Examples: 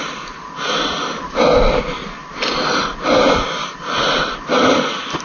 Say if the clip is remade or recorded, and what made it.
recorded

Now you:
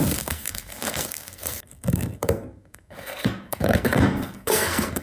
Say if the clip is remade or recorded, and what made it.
remade, codec, SNAC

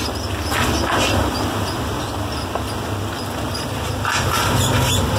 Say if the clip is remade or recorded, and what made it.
recorded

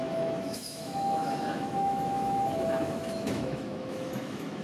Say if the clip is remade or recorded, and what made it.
remade, autoencoder, DAC-VAE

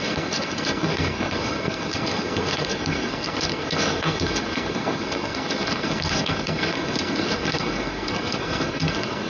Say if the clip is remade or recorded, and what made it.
remade, codec, SNAC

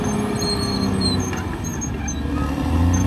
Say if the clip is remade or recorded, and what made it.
recorded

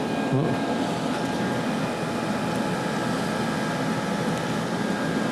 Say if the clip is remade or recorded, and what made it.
recorded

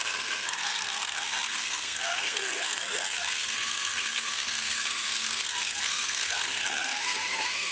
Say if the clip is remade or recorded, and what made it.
remade, codec, SNAC